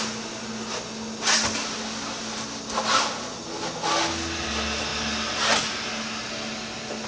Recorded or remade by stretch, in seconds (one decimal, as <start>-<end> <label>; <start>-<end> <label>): 0.0-7.1 recorded